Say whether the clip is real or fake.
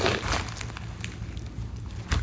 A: real